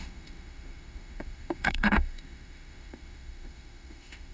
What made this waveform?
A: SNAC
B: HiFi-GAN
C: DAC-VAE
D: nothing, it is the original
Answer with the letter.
C